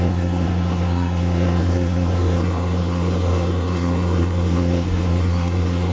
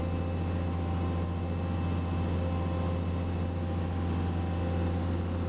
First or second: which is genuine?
second